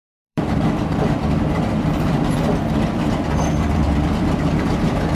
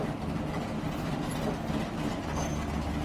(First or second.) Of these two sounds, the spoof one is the first